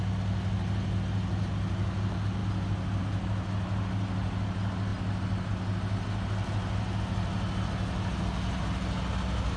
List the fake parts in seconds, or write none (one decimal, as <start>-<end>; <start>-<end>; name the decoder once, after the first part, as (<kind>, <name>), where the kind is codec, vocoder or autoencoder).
none